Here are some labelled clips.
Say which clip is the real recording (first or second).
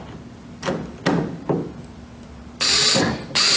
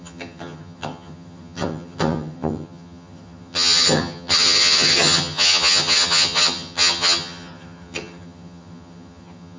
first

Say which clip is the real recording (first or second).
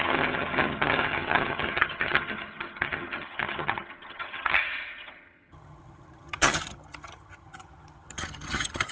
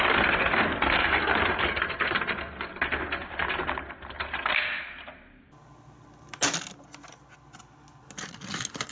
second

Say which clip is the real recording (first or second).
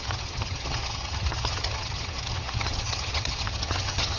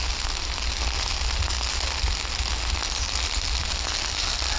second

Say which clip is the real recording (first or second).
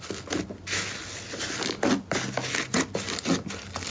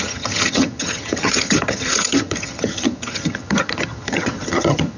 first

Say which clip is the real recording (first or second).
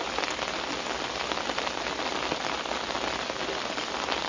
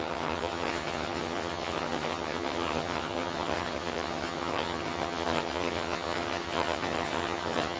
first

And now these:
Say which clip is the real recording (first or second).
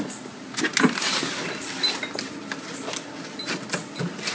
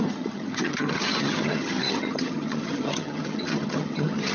first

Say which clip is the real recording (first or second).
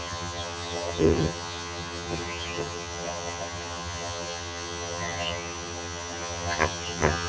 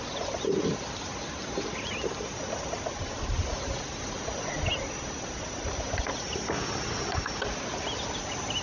second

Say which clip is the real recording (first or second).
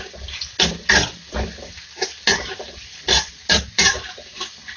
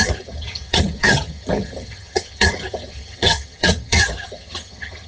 first